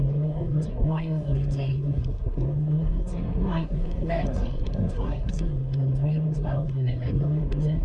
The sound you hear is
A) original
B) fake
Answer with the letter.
B